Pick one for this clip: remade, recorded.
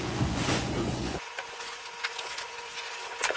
remade